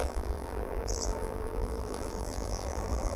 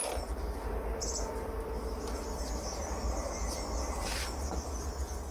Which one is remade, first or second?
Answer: first